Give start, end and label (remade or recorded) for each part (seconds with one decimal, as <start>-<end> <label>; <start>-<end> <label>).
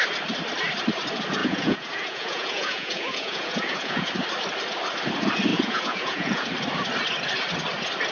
0.0-1.4 recorded; 1.4-4.1 remade; 4.1-5.5 recorded; 5.5-6.5 remade; 6.5-8.1 recorded